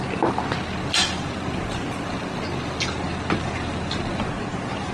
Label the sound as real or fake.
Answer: real